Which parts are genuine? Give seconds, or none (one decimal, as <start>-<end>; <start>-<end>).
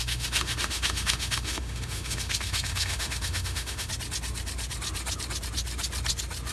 3.9-6.5